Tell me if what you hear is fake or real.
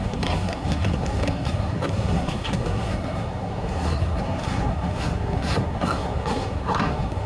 fake